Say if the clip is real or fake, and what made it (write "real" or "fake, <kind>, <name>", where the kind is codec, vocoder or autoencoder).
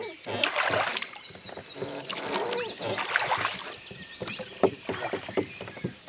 real